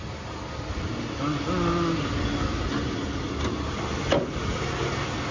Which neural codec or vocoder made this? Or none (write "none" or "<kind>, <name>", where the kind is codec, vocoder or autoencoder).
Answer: none